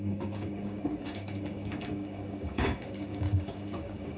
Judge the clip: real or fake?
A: fake